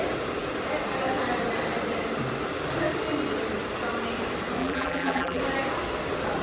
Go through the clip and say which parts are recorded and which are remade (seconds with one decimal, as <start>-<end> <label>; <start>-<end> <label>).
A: 0.0-4.6 recorded; 4.6-5.4 remade; 5.4-6.4 recorded